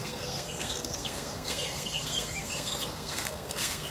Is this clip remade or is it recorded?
remade